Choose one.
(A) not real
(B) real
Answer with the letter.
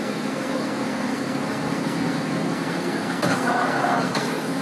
A